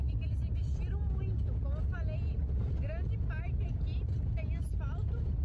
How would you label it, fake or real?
real